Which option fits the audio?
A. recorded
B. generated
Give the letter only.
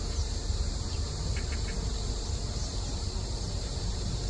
B